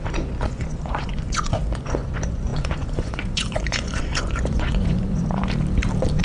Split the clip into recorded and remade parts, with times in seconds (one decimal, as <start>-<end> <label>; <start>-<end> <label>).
0.0-5.4 remade; 5.4-6.2 recorded